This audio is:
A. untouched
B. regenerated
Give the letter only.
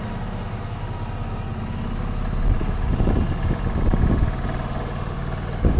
A